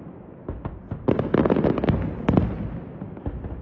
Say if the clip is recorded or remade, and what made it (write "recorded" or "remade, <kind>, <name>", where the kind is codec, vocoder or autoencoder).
recorded